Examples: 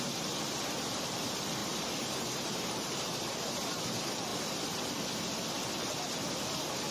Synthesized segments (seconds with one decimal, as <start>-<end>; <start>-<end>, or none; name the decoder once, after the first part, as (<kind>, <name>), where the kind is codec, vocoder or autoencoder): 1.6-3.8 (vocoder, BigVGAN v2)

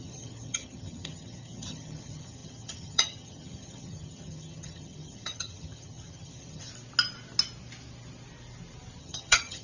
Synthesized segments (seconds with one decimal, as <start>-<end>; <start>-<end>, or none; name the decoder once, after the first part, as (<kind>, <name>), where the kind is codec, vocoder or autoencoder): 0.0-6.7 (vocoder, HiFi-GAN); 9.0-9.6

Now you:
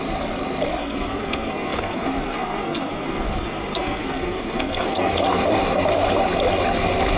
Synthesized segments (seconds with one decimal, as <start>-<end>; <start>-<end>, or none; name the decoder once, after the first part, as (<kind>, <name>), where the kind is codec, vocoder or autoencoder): 0.8-5.1 (codec, SNAC)

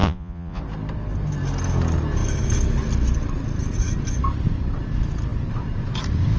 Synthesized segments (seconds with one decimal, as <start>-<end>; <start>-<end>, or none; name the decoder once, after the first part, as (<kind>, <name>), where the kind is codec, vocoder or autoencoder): 0.0-0.6 (vocoder, Vocos)

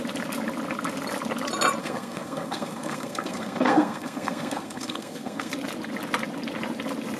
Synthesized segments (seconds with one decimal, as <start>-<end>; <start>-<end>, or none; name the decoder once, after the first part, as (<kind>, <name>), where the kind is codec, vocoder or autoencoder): 1.8-5.5 (codec, SNAC)